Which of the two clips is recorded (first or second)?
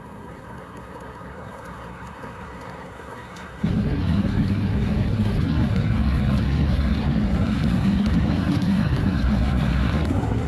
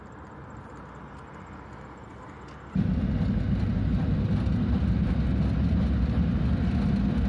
second